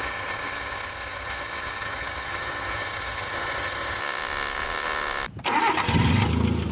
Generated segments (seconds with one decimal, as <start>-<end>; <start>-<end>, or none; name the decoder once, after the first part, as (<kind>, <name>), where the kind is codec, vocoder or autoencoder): 0.0-4.0 (vocoder, HiFi-GAN)